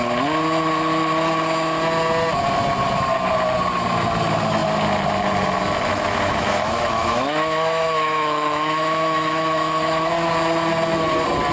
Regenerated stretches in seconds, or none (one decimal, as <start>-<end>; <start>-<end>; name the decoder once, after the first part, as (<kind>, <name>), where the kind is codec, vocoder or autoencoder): 5.9-10.1 (autoencoder, DAC-VAE)